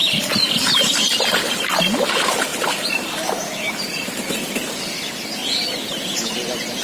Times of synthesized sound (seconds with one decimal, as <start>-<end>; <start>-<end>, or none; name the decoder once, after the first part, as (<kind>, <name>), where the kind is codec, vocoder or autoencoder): none